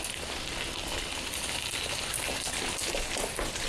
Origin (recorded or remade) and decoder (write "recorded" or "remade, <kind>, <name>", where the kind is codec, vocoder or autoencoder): recorded